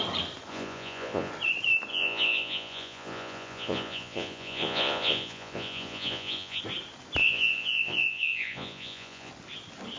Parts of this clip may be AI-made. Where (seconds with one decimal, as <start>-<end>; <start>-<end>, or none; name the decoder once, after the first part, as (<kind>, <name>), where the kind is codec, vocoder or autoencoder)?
0.5-1.3 (vocoder, Vocos); 1.9-6.6; 7.2-9.3